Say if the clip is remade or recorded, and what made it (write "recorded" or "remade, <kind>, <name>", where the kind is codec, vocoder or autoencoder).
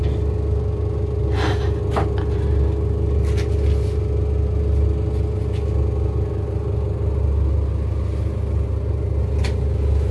recorded